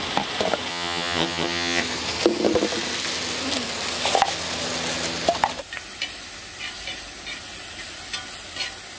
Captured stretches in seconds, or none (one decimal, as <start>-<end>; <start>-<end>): 0.0-0.7; 1.8-9.0